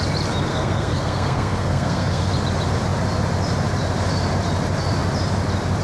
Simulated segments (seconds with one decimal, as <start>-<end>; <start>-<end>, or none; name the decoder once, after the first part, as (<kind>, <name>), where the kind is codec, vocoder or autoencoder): 0.5-2.3 (codec, SNAC)